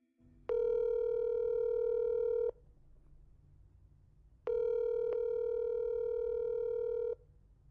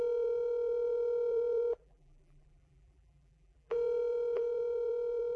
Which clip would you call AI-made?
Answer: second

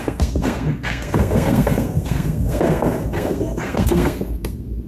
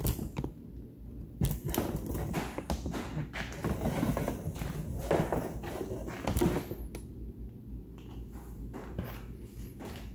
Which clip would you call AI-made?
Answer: first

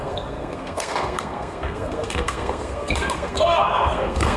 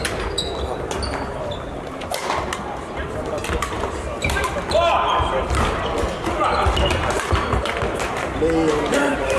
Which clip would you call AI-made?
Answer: first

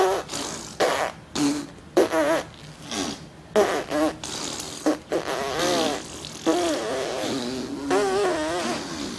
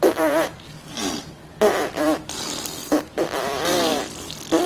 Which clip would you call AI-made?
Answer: second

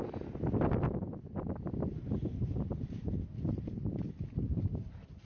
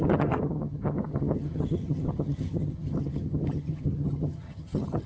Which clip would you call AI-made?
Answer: second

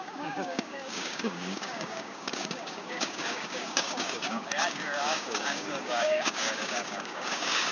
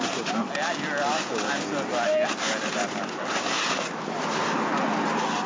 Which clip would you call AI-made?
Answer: first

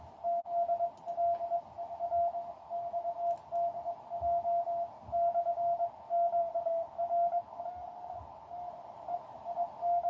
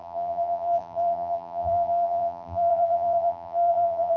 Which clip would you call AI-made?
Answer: second